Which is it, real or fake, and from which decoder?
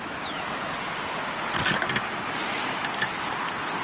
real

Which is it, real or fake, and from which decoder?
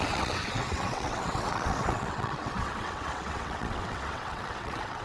fake, vocoder, WaveNeXt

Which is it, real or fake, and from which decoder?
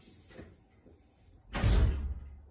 real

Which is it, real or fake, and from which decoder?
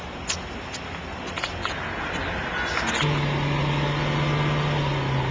real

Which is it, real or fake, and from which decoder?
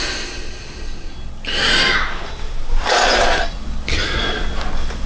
real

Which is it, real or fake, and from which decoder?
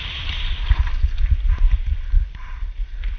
real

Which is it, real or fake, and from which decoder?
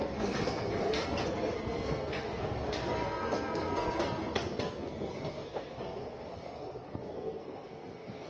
fake, codec, SNAC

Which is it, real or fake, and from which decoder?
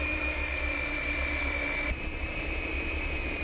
fake, vocoder, BigVGAN v2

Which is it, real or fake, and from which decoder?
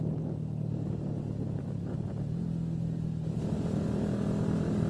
real